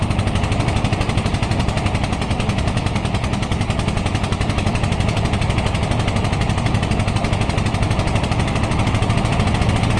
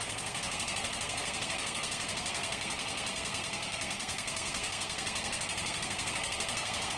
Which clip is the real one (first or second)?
first